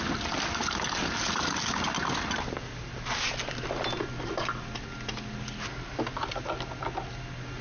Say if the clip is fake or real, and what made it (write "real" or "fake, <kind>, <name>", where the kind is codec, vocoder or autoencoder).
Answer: real